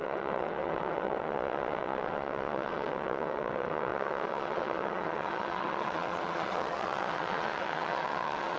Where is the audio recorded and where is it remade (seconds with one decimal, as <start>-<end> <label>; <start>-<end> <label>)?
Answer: 0.0-8.6 remade

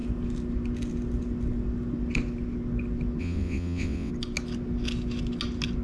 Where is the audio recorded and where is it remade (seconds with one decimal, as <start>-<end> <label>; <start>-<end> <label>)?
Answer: 0.0-3.2 recorded; 3.2-4.1 remade; 4.1-5.8 recorded

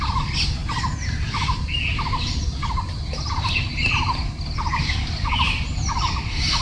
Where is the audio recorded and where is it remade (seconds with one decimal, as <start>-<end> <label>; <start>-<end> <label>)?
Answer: 0.0-6.6 recorded

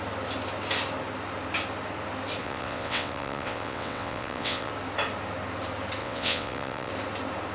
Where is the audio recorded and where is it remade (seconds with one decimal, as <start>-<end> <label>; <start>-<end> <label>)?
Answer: 0.0-2.4 recorded; 2.4-4.7 remade; 4.7-6.0 recorded; 6.0-6.9 remade; 6.9-7.5 recorded

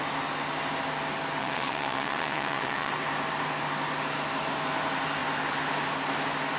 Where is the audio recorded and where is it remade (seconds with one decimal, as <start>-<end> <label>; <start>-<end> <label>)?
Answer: 0.0-1.4 recorded; 1.4-2.9 remade; 2.9-6.6 recorded

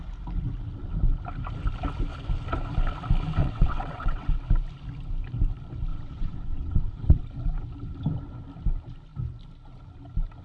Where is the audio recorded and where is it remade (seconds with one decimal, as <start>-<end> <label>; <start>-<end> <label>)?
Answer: 0.0-3.4 recorded; 3.4-4.4 remade; 4.4-5.9 recorded; 5.9-7.2 remade; 7.2-10.4 recorded

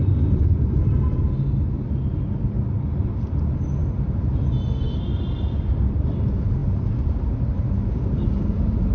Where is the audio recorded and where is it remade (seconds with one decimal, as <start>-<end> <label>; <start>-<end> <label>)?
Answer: 0.0-8.9 recorded

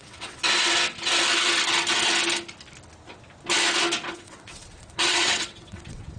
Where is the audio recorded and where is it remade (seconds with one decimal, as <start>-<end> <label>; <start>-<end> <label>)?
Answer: 0.0-0.4 remade; 0.4-4.1 recorded; 4.1-6.2 remade